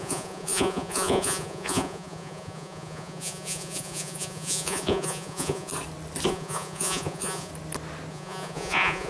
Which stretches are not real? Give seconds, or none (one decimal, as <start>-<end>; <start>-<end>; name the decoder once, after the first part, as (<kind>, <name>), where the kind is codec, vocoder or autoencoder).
0.0-5.7 (vocoder, Vocos); 6.3-7.5; 8.1-9.1